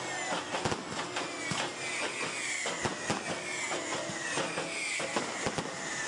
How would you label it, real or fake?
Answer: real